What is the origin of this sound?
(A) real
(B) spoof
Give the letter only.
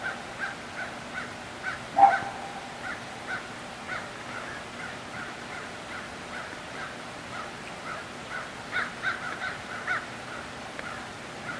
A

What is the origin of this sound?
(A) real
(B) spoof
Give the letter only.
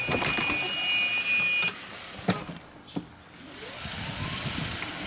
A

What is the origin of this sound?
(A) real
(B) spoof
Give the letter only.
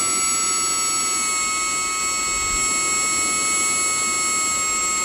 A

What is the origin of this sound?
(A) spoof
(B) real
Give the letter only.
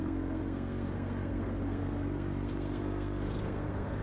A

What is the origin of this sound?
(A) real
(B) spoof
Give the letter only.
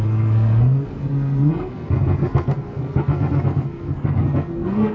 B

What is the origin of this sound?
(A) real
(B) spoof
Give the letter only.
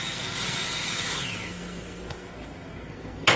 B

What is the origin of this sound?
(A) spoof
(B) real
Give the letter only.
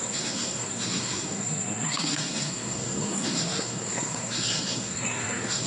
A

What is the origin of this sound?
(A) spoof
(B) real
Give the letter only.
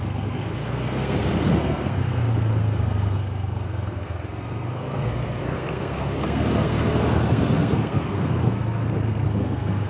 A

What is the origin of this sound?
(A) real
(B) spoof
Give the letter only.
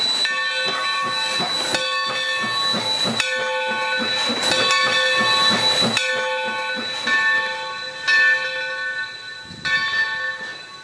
A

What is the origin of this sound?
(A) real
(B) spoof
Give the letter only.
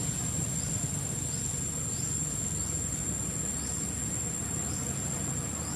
A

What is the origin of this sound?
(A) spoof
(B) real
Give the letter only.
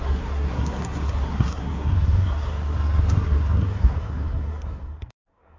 A